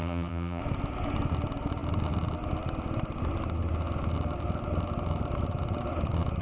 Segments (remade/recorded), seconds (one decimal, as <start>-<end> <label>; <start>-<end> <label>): 0.0-0.6 remade; 0.6-6.4 recorded